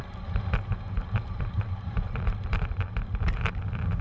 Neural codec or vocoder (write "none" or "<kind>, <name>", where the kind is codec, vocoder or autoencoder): vocoder, BigVGAN v2